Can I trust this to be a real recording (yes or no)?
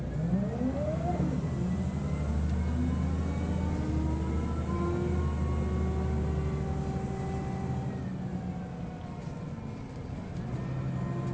yes